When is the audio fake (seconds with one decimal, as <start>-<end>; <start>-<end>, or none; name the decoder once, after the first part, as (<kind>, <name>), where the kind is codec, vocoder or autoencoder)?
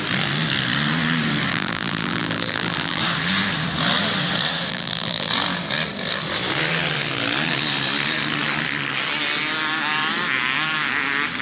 1.5-3.0 (vocoder, BigVGAN v2); 4.7-5.3